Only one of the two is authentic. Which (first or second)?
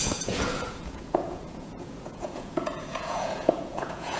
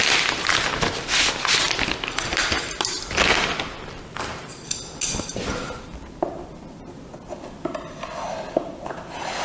second